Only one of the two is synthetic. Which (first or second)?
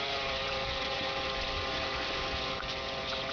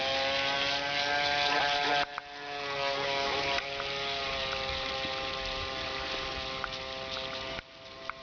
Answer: first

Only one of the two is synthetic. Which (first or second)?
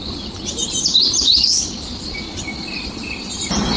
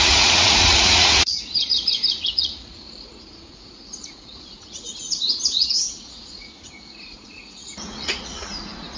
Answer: second